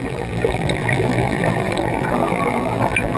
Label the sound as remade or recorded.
remade